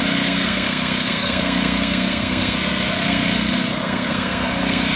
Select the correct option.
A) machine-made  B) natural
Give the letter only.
A